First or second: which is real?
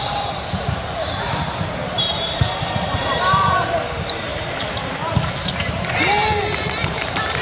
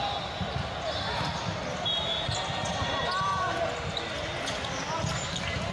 second